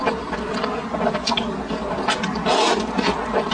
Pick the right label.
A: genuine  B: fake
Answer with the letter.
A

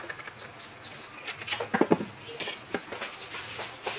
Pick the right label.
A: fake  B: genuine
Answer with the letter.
B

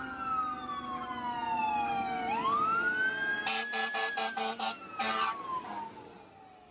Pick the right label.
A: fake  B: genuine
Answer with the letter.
B